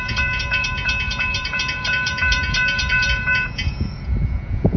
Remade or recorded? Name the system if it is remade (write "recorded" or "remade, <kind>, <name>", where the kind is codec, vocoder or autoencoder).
remade, vocoder, Vocos